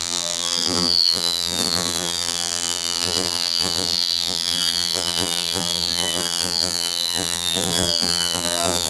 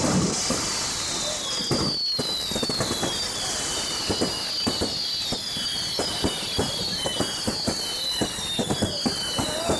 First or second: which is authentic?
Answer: second